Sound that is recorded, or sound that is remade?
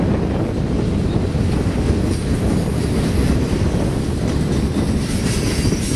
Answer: recorded